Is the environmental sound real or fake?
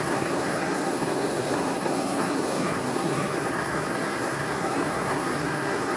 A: fake